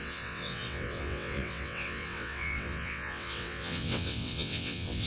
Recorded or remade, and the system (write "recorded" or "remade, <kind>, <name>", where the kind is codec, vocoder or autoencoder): remade, vocoder, WaveNeXt